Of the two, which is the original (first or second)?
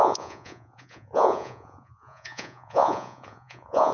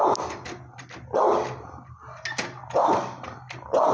second